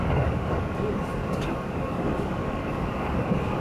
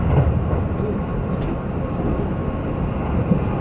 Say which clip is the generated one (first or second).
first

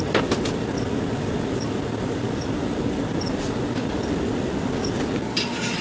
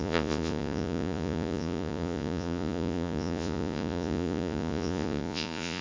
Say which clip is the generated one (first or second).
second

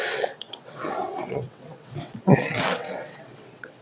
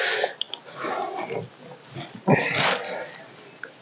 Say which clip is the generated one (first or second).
first